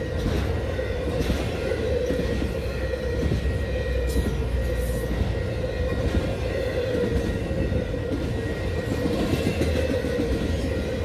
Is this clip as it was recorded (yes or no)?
yes